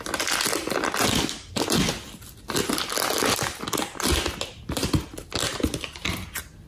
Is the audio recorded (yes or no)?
yes